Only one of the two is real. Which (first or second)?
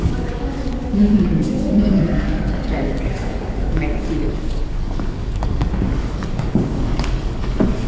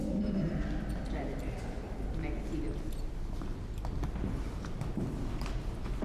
second